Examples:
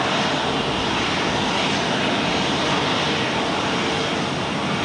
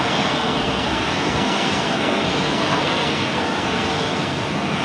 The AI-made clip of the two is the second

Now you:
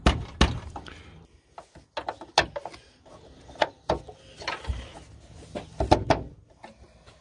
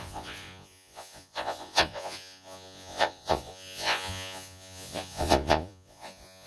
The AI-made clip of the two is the second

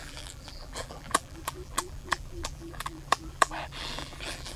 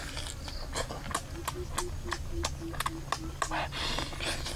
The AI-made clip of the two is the first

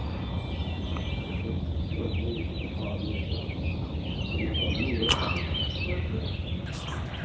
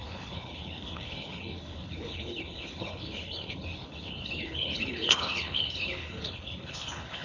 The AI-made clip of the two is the second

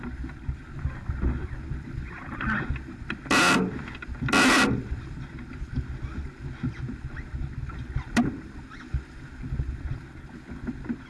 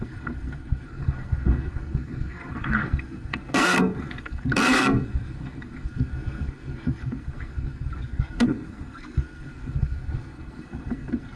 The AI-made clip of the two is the second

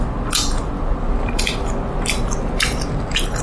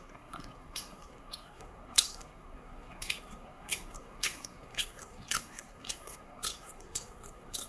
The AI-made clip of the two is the second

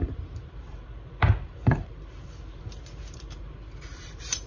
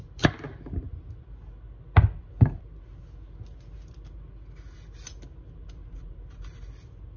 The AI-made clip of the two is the first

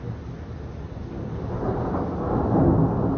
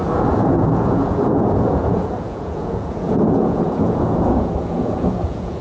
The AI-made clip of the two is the second